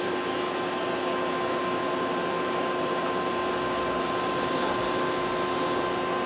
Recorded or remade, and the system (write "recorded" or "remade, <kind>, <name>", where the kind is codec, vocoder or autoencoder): recorded